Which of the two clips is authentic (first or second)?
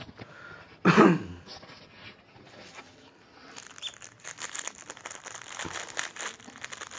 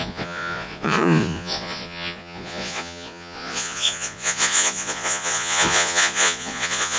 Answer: first